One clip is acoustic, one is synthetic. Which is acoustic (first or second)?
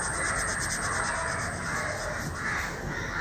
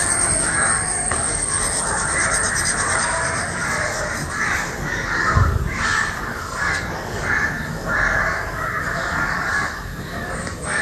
first